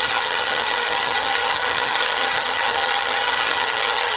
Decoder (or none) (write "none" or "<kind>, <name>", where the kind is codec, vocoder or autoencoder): vocoder, HiFi-GAN